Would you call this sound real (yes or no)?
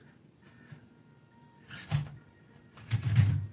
yes